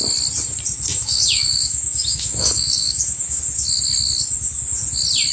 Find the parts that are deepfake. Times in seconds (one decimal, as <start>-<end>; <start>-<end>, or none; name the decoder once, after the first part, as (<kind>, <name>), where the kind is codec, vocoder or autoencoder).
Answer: 0.9-3.4 (autoencoder, DAC-VAE)